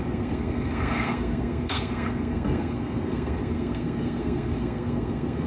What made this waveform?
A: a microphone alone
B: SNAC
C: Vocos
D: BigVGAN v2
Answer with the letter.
B